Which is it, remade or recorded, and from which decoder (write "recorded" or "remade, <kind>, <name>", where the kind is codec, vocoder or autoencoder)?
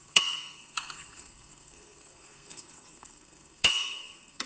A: remade, codec, SNAC